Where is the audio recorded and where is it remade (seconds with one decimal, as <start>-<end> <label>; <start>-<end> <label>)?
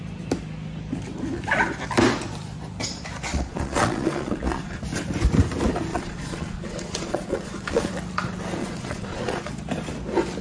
0.0-3.3 recorded; 3.3-4.8 remade; 4.8-5.9 recorded; 5.9-7.9 remade; 7.9-8.6 recorded; 8.6-9.5 remade; 9.5-10.4 recorded